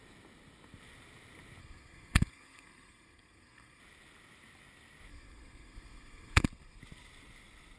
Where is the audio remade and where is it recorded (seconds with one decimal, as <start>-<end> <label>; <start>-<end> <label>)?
0.0-1.6 recorded; 1.6-3.8 remade; 3.8-5.1 recorded; 5.1-6.8 remade; 6.8-7.8 recorded